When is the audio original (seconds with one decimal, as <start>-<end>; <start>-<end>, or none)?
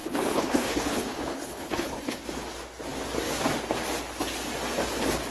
2.2-5.3